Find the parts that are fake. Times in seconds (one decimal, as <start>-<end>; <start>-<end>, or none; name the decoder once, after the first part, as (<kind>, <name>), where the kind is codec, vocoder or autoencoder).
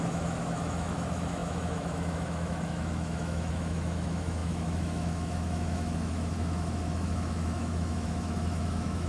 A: 0.0-9.1 (autoencoder, DAC-VAE)